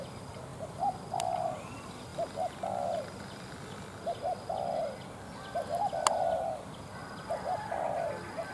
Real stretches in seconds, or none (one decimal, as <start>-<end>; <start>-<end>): 0.0-0.5; 1.4-7.0; 7.9-8.5